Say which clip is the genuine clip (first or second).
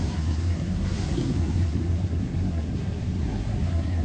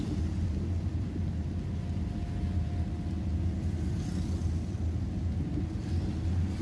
second